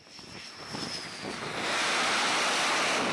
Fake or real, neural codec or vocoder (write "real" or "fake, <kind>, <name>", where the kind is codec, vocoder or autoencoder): real